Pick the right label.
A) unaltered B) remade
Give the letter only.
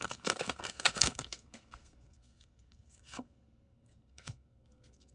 B